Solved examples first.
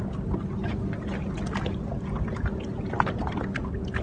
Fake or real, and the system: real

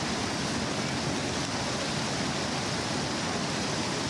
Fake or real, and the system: real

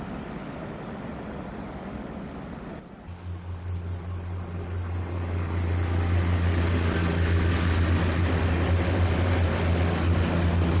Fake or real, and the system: real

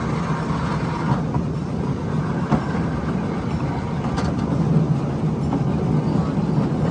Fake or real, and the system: real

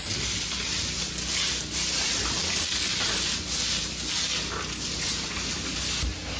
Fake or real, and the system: real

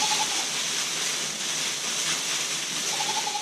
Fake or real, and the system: real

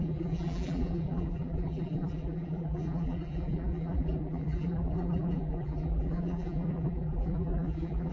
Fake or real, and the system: fake, vocoder, BigVGAN v2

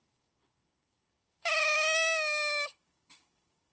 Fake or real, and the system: fake, codec, DAC